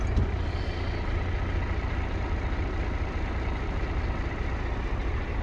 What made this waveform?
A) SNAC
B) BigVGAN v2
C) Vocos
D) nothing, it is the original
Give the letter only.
D